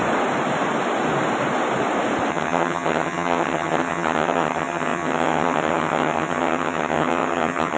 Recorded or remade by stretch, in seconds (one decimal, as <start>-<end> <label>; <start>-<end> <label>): 0.0-2.3 recorded; 2.3-7.8 remade